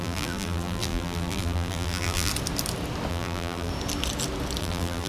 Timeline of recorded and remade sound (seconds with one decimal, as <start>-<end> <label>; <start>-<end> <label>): 0.0-2.3 remade; 2.3-3.1 recorded; 3.1-3.7 remade; 3.7-4.6 recorded; 4.6-5.1 remade